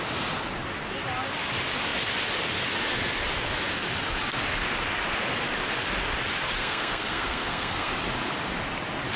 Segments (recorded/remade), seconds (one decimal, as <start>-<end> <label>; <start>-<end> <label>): 0.0-6.6 recorded; 6.6-7.9 remade; 7.9-9.2 recorded